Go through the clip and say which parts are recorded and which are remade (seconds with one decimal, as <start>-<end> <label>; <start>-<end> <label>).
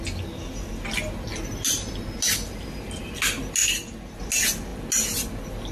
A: 0.0-5.7 recorded